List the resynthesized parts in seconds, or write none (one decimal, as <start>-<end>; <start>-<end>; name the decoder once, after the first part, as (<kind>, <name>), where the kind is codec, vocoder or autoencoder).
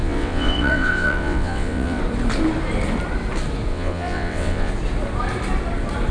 0.0-2.0 (vocoder, WaveNeXt); 3.7-4.7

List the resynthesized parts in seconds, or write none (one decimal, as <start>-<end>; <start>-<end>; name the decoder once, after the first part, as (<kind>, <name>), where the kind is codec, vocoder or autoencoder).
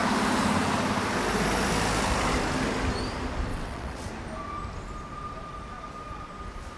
3.5-4.1 (vocoder, WaveNeXt)